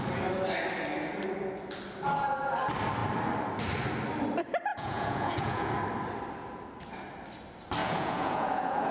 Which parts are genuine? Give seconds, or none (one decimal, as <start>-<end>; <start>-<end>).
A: 0.0-4.7; 5.7-7.8